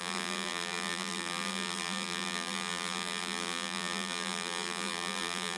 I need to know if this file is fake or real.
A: fake